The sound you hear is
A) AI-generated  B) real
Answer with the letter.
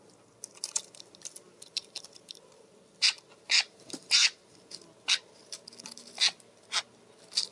B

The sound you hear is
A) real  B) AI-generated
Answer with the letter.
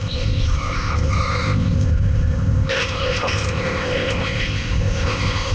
B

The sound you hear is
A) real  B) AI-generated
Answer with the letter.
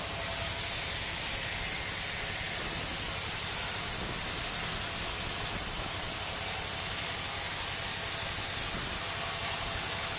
A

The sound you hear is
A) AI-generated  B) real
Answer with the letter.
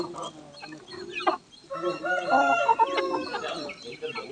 B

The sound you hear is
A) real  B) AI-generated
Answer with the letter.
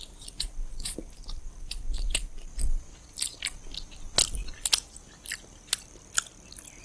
A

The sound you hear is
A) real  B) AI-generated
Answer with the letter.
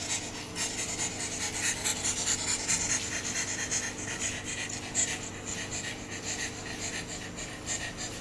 A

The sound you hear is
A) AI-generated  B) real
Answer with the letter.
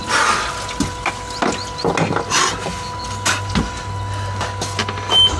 B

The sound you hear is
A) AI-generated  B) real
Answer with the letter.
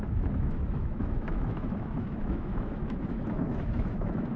A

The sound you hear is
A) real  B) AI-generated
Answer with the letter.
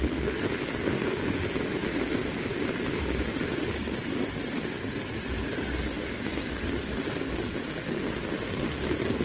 A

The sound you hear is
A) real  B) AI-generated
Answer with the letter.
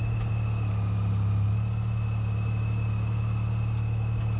A